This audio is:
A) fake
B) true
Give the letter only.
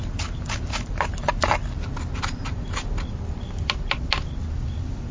B